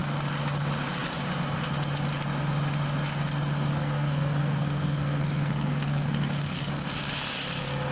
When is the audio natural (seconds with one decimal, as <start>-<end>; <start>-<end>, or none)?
0.0-3.7; 6.7-7.9